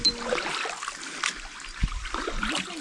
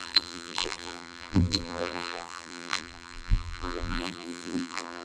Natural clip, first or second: first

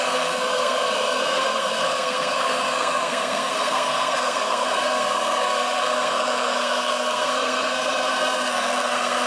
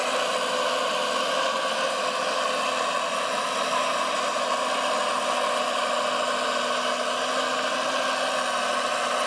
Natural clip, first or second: second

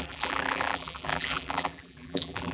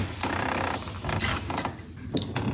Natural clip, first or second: second